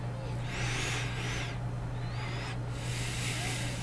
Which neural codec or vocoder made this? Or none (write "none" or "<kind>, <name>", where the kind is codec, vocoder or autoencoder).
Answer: none